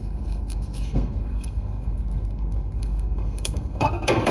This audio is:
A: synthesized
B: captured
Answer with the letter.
A